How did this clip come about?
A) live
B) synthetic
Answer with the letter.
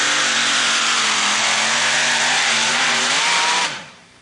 B